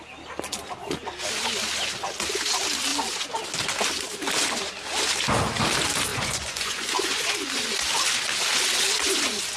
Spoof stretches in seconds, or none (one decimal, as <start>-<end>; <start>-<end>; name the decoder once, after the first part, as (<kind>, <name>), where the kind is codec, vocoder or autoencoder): 6.1-7.5 (vocoder, Vocos)